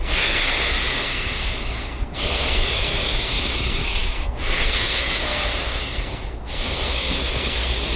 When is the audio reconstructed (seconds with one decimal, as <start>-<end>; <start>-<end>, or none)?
0.0-8.0